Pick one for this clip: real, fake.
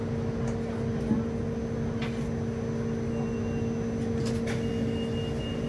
real